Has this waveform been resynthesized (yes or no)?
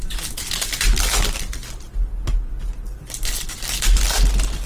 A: no